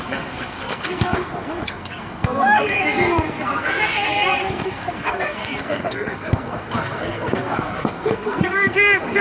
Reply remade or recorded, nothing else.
remade